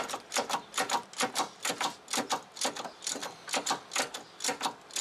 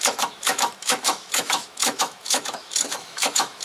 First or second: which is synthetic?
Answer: second